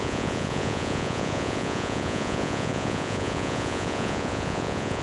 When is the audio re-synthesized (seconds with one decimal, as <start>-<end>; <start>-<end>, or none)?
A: 0.0-5.0